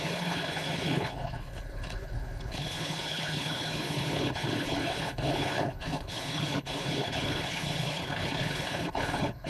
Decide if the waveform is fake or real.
fake